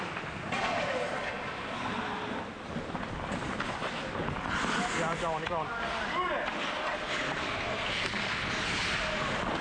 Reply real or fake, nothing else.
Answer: real